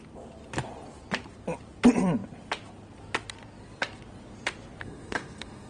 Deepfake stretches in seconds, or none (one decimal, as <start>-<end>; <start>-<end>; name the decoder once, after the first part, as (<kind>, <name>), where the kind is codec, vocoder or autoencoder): 4.8-5.7 (codec, SNAC)